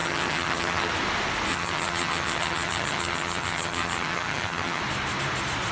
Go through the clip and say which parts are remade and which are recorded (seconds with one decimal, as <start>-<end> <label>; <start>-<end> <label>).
0.0-0.9 remade; 0.9-1.5 recorded; 1.5-4.8 remade; 4.8-5.7 recorded